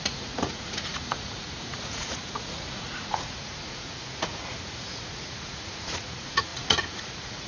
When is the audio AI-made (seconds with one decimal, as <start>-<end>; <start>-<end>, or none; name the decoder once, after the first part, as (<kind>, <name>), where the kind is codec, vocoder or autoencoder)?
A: 0.0-7.5 (vocoder, Vocos)